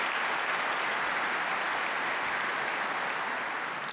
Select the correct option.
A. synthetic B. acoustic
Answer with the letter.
B